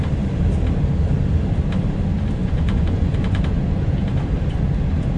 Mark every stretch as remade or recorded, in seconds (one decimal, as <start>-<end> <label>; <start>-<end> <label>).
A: 0.0-2.4 recorded; 2.4-3.4 remade; 3.4-5.2 recorded